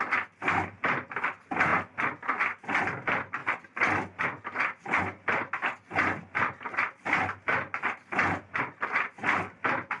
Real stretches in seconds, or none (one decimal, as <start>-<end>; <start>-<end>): 0.0-10.0

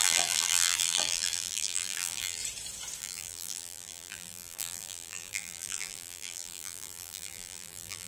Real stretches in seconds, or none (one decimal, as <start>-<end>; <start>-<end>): 2.4-3.0

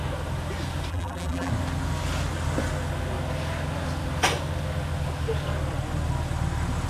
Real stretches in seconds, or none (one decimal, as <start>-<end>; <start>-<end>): 0.0-0.9; 1.5-6.9

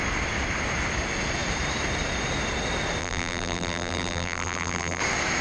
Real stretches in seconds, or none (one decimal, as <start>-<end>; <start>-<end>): 0.0-3.0; 5.0-5.4